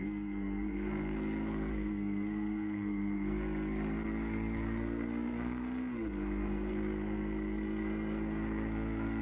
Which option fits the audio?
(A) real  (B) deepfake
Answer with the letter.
B